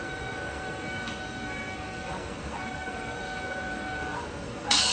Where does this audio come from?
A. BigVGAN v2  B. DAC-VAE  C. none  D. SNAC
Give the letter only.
D